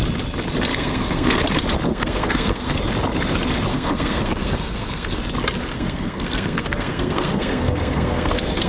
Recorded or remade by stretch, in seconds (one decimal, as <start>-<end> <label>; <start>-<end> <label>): 0.0-0.7 recorded; 0.7-1.4 remade; 1.4-1.9 recorded; 1.9-2.8 remade; 2.8-3.7 recorded; 3.7-5.2 remade; 5.2-5.7 recorded; 5.7-8.7 remade